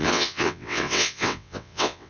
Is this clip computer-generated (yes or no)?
yes